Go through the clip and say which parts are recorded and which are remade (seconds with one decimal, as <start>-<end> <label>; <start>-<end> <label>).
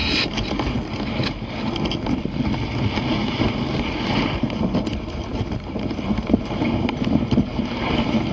0.0-5.3 recorded; 5.3-8.3 remade